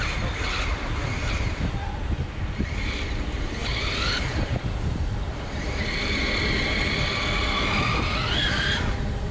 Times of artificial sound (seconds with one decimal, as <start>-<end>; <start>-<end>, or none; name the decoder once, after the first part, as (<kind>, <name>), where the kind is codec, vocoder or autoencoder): 0.0-9.3 (vocoder, BigVGAN v2)